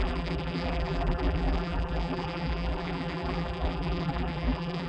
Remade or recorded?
remade